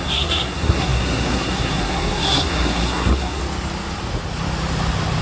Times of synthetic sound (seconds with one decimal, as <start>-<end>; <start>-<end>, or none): 0.0-3.4